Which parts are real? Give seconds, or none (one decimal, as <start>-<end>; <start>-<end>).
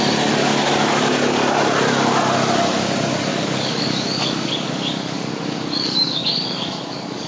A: 0.0-0.4; 1.6-3.3